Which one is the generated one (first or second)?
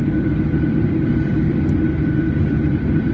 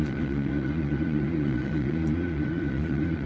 second